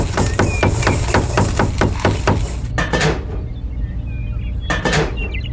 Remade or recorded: recorded